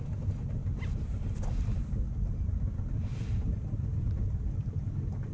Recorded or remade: recorded